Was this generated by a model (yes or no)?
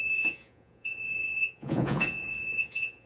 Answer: yes